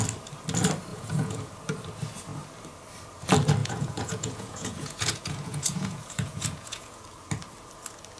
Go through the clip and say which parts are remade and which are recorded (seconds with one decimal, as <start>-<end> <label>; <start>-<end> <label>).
0.0-0.9 recorded; 0.9-1.5 remade; 1.5-3.6 recorded; 3.6-7.0 remade; 7.0-8.2 recorded